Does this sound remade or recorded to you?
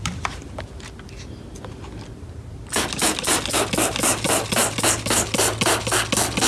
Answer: recorded